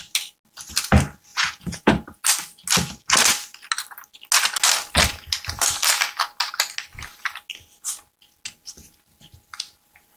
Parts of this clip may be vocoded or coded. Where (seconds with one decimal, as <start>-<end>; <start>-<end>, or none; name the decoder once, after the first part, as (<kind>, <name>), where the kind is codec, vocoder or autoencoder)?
1.3-1.9 (vocoder, Vocos)